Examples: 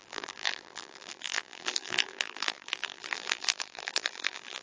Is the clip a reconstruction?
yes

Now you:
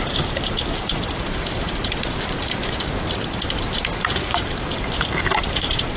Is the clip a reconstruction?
yes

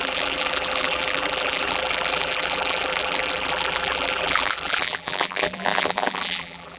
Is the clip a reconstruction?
yes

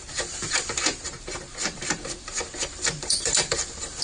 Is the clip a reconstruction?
yes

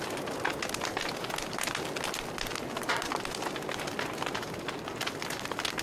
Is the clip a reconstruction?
no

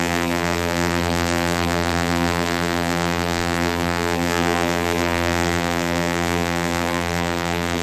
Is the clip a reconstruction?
yes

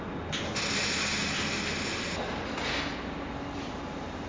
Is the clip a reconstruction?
no